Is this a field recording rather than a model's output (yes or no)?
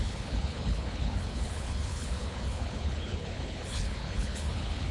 no